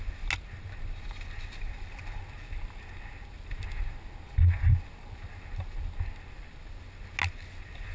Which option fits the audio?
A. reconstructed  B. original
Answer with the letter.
B